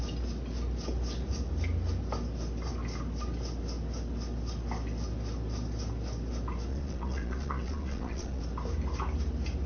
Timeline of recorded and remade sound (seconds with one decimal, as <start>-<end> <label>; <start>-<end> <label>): 0.0-6.7 recorded; 6.7-8.4 remade; 8.4-9.7 recorded